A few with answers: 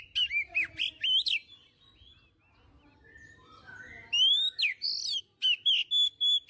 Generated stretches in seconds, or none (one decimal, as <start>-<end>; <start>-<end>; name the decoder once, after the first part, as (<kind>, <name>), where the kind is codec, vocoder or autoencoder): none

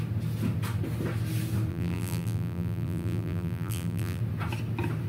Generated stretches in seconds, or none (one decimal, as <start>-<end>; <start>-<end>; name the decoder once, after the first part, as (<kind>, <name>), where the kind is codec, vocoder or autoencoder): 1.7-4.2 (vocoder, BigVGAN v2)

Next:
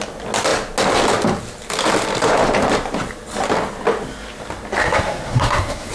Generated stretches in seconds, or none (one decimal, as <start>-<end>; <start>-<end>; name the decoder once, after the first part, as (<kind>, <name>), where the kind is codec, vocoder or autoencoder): 4.8-5.9 (codec, SNAC)

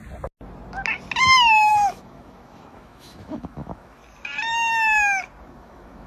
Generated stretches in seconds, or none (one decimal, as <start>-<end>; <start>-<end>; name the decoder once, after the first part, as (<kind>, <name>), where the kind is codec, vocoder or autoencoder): 1.2-4.0 (autoencoder, DAC-VAE); 5.4-6.1

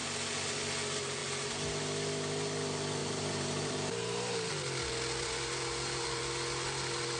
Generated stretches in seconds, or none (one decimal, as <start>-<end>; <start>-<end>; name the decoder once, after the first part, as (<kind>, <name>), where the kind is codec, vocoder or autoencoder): 3.0-4.5 (vocoder, BigVGAN v2)